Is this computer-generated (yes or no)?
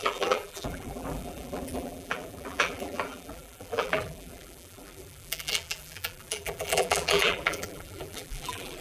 yes